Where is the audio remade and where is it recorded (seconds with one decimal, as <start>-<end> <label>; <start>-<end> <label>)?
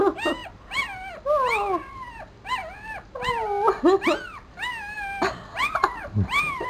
0.0-0.4 recorded; 0.4-1.1 remade; 1.1-5.6 recorded; 5.6-6.7 remade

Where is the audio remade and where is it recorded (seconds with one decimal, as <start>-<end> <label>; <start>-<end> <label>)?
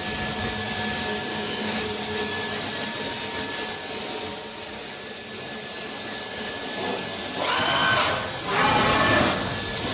0.0-1.3 recorded; 1.3-1.8 remade; 1.8-9.9 recorded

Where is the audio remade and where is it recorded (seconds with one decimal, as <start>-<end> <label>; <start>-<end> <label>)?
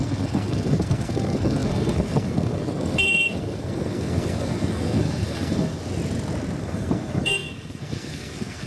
0.0-5.8 remade; 5.8-6.6 recorded; 6.6-8.7 remade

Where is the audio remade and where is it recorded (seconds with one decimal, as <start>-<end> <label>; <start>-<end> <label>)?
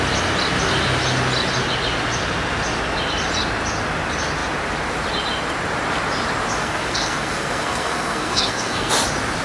0.0-6.6 recorded; 6.6-8.9 remade; 8.9-9.4 recorded